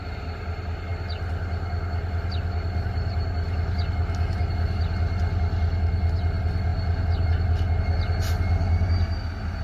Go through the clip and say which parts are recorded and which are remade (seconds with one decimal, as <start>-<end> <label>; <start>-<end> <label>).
0.0-9.6 recorded